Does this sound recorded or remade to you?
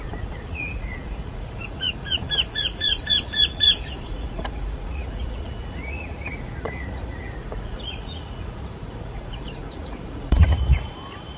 remade